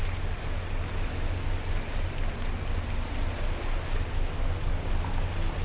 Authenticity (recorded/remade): recorded